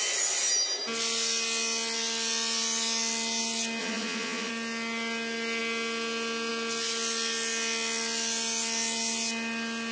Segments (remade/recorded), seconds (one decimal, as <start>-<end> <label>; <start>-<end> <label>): 0.0-3.8 recorded; 3.8-4.5 remade; 4.5-9.9 recorded